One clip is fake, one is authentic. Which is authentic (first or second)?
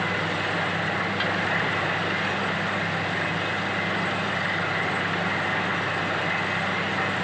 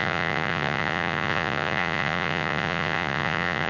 first